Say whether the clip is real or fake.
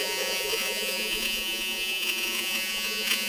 fake